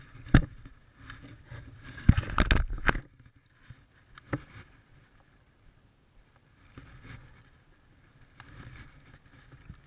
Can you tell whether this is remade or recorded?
recorded